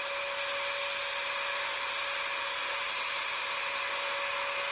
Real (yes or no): yes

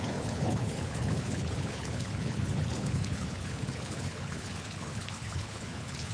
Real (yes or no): no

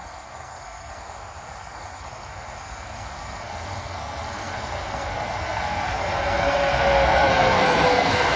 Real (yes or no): no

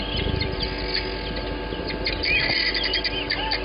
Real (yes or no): yes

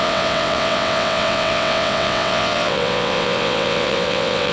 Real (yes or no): no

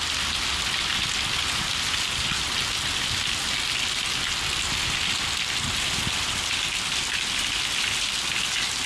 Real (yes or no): yes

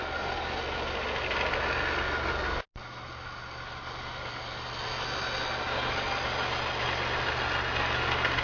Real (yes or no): yes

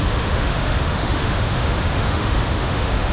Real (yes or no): no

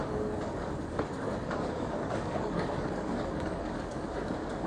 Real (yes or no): no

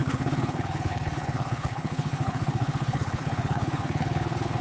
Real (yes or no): no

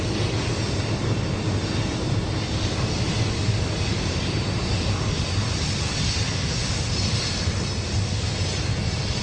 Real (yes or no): yes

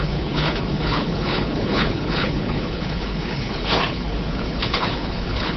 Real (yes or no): no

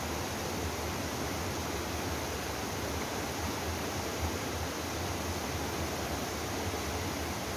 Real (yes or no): yes